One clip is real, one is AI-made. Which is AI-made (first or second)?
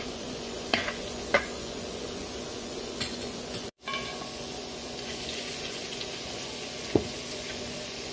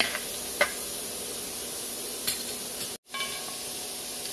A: first